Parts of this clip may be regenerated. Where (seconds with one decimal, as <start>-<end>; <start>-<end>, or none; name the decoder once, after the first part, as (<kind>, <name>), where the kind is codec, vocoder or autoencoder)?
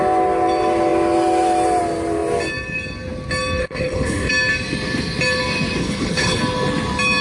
3.6-4.3 (codec, HILCodec); 5.8-6.4